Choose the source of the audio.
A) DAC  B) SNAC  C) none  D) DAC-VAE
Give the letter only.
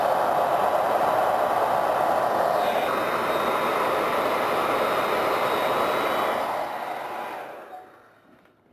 C